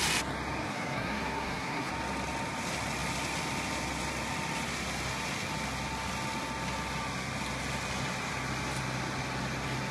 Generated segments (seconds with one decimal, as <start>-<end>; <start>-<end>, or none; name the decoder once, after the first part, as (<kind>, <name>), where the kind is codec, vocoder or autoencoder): 0.7-1.9 (codec, SNAC)